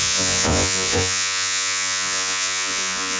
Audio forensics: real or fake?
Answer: fake